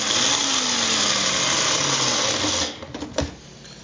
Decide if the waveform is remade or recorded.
recorded